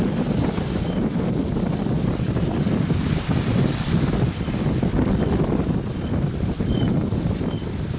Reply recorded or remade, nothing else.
recorded